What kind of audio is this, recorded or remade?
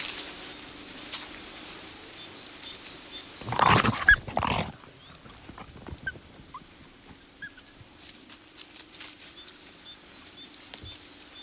recorded